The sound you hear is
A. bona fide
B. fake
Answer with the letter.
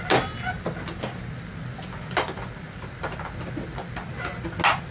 A